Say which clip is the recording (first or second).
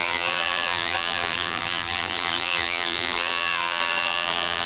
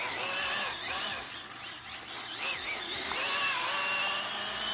second